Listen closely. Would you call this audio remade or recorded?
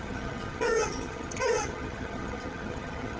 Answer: remade